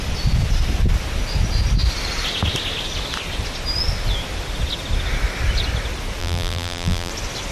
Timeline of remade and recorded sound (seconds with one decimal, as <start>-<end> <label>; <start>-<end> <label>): 0.0-6.2 recorded; 6.2-7.1 remade; 7.1-7.5 recorded